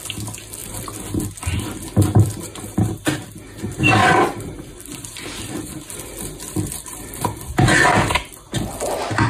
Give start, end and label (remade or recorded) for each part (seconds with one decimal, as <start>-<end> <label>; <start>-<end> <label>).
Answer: 0.0-0.6 recorded; 0.6-1.2 remade; 1.2-4.0 recorded; 4.0-8.1 remade; 8.1-9.3 recorded